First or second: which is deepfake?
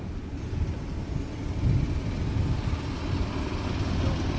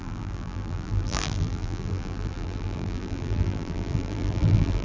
second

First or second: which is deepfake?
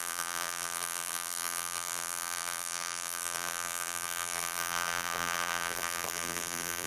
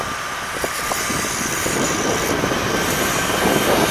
first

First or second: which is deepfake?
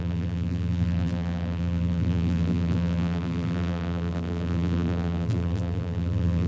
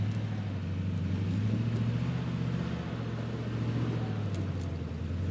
first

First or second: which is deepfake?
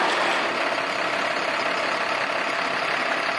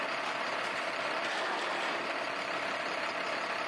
second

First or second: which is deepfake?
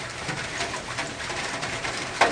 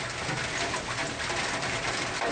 first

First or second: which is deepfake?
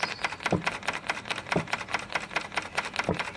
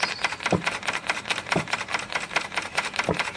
second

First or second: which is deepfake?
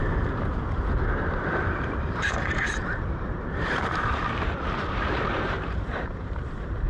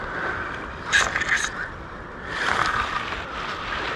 first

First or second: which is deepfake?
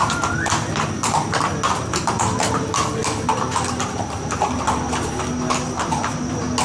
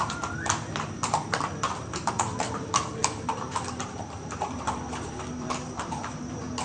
second